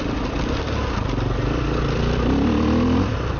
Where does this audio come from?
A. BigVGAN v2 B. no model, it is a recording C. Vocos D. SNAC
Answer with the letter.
B